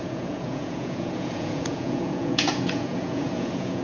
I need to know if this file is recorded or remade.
remade